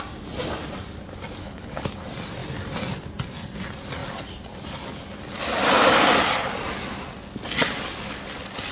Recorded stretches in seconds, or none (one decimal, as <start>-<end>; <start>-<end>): 0.0-1.4; 2.0-8.7